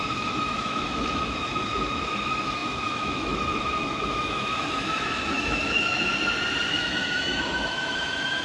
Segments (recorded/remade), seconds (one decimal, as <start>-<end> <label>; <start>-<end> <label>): 0.0-6.1 remade; 6.1-6.7 recorded; 6.7-8.4 remade